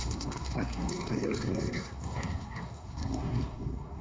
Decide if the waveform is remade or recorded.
remade